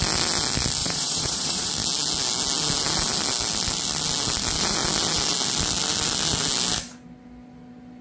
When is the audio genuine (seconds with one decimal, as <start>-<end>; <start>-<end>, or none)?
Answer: 0.0-0.8; 1.7-8.0